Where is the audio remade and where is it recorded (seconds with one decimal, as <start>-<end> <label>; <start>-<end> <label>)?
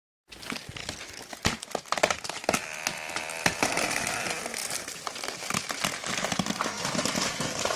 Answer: 0.0-7.8 recorded